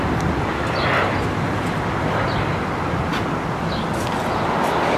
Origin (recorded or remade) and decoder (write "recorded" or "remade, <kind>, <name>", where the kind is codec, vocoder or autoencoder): recorded